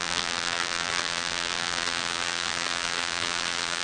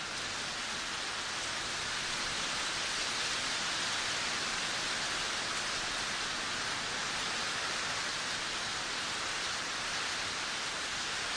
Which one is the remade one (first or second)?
first